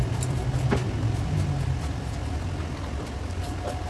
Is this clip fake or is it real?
fake